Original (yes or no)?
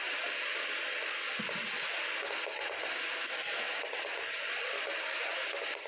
yes